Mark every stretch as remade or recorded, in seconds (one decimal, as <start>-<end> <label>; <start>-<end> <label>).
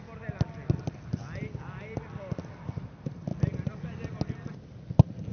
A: 0.0-5.3 recorded